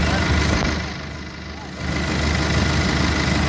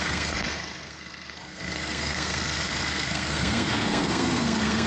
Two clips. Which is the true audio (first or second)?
first